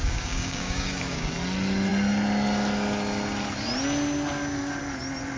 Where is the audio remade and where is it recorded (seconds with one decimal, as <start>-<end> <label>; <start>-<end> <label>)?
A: 0.0-1.3 remade; 1.3-5.4 recorded